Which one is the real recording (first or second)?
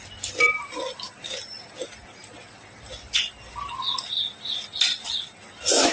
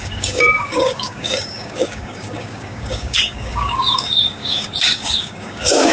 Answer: first